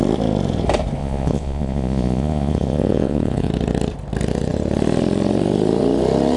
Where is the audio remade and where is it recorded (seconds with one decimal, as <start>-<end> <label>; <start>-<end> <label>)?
0.0-1.0 recorded; 1.0-3.5 remade; 3.5-6.4 recorded